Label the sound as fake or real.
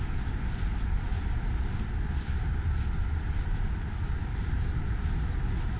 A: real